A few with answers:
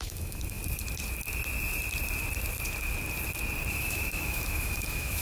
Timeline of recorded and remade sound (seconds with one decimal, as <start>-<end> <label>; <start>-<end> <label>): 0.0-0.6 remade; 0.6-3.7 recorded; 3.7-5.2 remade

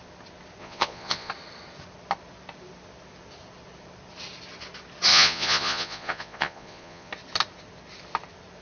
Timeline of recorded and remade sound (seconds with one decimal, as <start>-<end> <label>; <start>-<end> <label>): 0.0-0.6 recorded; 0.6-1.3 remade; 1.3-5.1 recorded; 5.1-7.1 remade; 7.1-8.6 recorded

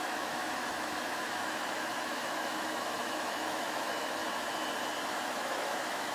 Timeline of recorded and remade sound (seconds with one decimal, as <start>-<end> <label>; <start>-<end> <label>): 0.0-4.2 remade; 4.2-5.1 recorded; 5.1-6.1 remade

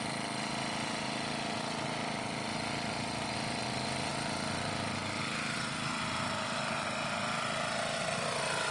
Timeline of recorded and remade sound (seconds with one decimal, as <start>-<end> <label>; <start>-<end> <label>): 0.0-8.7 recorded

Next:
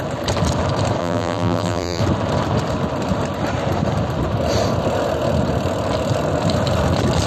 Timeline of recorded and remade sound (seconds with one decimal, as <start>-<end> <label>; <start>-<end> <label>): 0.0-1.0 recorded; 1.0-2.0 remade; 2.0-7.3 recorded

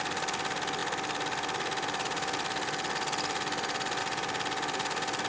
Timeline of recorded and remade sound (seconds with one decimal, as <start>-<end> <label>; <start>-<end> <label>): 0.0-5.3 recorded

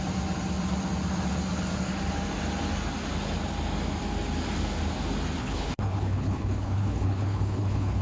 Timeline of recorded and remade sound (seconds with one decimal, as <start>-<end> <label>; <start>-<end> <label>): 0.0-5.4 recorded; 5.4-8.0 remade